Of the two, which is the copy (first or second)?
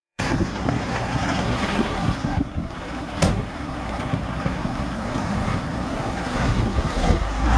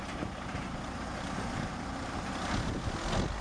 first